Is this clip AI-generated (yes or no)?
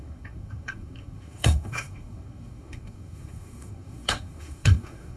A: yes